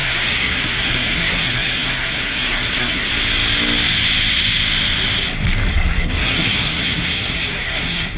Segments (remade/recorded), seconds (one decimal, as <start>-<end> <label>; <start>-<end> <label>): 0.0-3.1 remade; 3.1-5.7 recorded; 5.7-8.2 remade